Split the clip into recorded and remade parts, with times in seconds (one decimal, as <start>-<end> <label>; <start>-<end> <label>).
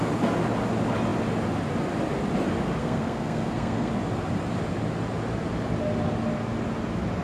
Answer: 0.0-2.8 recorded; 2.8-3.9 remade; 3.9-7.2 recorded